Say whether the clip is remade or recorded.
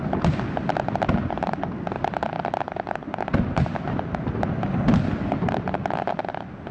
recorded